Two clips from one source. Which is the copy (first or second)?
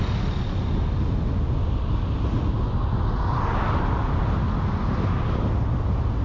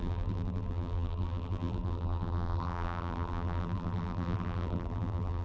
second